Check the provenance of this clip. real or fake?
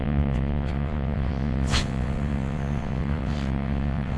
fake